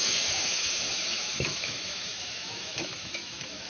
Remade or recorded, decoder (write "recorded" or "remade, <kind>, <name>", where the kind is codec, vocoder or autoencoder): remade, autoencoder, DAC-VAE